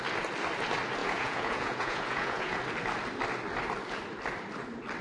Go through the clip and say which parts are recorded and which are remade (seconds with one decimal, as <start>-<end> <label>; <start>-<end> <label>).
0.0-1.0 recorded; 1.0-2.6 remade; 2.6-5.0 recorded